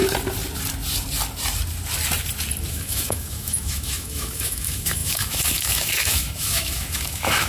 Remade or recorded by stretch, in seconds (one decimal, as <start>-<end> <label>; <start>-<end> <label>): 0.0-2.7 recorded; 2.7-7.5 remade

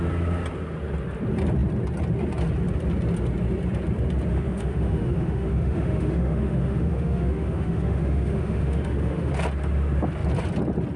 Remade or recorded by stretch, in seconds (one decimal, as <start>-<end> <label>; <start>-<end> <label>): 0.0-4.3 recorded; 4.3-9.3 remade; 9.3-11.0 recorded